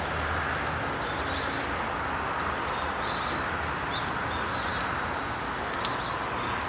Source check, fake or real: real